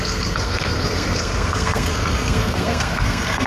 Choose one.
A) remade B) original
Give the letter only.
A